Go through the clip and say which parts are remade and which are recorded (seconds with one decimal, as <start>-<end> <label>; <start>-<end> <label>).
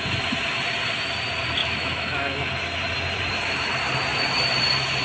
0.0-1.6 recorded; 1.6-2.5 remade; 2.5-5.0 recorded